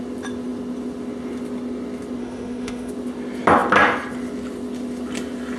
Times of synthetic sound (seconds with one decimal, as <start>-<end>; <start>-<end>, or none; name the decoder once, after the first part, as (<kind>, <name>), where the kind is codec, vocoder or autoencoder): 2.2-2.9 (autoencoder, DAC-VAE)